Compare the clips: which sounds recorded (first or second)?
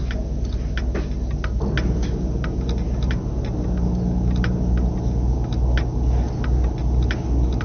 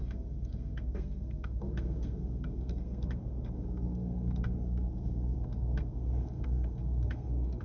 first